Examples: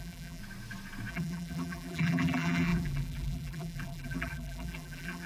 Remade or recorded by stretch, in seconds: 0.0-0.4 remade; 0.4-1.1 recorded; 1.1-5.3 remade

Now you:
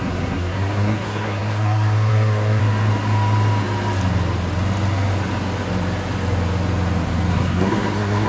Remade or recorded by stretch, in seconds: 0.0-2.6 remade; 2.6-7.3 recorded; 7.3-8.3 remade

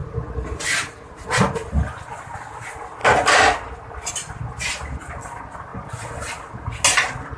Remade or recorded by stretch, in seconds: 0.0-7.4 recorded

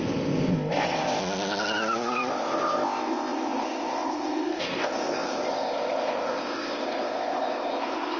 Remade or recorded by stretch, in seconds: 0.0-1.2 remade; 1.2-2.3 recorded; 2.3-8.2 remade

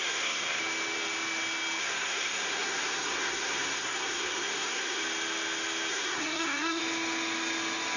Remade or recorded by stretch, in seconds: 0.0-0.6 remade; 0.6-1.8 recorded; 1.8-5.0 remade; 5.0-5.9 recorded; 5.9-6.8 remade; 6.8-8.0 recorded